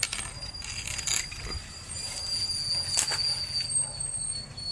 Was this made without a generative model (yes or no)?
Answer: yes